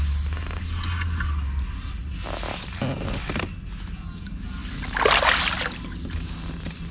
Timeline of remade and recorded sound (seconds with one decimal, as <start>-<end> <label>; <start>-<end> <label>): 0.0-6.9 recorded